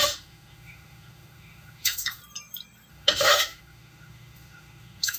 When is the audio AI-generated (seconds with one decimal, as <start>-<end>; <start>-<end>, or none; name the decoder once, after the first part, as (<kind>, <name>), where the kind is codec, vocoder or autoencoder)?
0.0-2.2 (autoencoder, DAC-VAE); 2.9-5.2